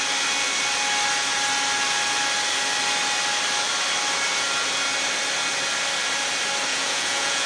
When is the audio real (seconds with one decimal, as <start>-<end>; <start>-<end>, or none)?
0.0-6.7